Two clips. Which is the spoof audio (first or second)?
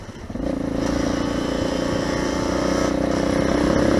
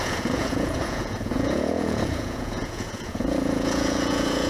second